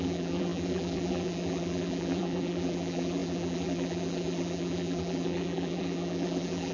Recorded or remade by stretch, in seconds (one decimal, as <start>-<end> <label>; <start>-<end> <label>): 0.0-6.7 remade